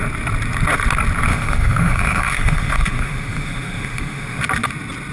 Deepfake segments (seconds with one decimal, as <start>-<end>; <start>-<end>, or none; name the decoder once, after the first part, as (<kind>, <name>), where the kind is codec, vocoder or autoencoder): 1.3-4.4 (autoencoder, DAC-VAE)